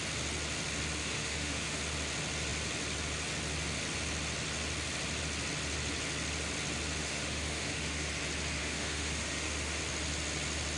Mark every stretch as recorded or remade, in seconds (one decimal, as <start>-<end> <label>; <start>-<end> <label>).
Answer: 0.0-1.0 recorded; 1.0-1.8 remade; 1.8-7.0 recorded; 7.0-8.1 remade; 8.1-8.6 recorded; 8.6-9.8 remade; 9.8-10.8 recorded